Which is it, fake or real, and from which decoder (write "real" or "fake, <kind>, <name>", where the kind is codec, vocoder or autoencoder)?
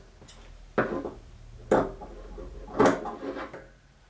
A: real